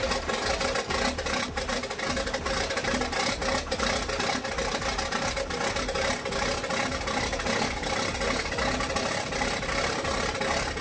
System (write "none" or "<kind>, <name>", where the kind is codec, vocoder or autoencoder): none